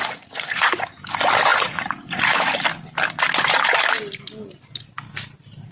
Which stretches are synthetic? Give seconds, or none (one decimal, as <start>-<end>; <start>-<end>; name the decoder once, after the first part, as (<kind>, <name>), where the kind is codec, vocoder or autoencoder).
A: 0.0-1.0 (vocoder, Vocos); 1.5-2.5

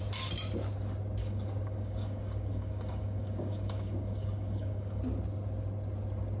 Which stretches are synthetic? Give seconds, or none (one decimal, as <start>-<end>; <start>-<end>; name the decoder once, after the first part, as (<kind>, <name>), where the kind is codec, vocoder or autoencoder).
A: 1.2-5.0 (codec, DAC)